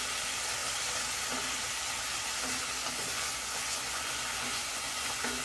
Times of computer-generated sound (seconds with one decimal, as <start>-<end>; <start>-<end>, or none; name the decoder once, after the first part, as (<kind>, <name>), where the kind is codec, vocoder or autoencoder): 2.8-5.4 (vocoder, Vocos)